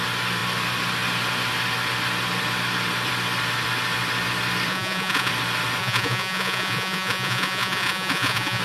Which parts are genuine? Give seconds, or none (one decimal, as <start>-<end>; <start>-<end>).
0.0-4.7; 5.3-5.8